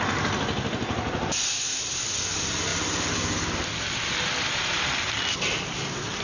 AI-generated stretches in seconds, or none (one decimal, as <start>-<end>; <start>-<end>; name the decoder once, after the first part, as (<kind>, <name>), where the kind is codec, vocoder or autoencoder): none